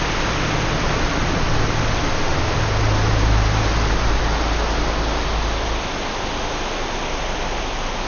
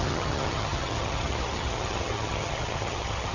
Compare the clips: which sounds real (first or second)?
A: first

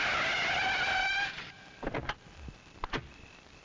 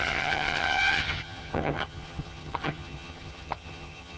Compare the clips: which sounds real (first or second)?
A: first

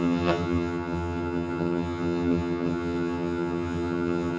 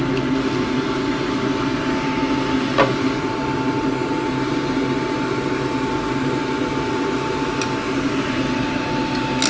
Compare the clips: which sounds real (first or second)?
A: second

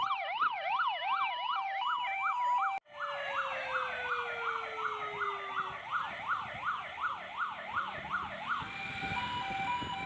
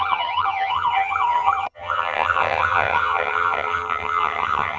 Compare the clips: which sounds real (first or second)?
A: first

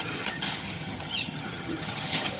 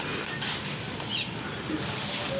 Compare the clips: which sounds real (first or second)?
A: second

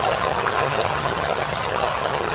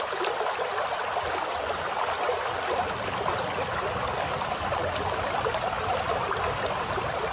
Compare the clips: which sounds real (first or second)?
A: second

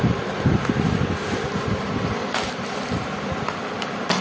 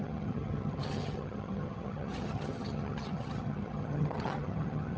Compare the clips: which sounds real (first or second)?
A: first